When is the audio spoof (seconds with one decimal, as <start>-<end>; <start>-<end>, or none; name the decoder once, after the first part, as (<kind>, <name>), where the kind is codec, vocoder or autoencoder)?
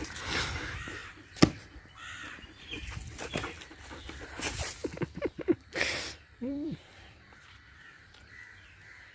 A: 1.0-3.7 (vocoder, BigVGAN v2); 4.8-8.3